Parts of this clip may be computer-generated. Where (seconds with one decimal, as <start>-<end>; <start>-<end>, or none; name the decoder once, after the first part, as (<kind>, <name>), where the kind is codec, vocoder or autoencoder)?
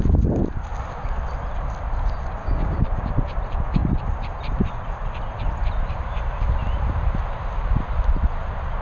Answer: 2.4-3.1 (codec, DAC)